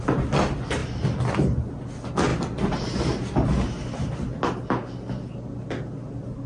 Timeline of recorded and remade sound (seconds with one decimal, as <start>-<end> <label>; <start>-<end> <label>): 0.0-6.5 recorded